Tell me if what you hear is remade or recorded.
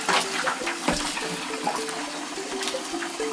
recorded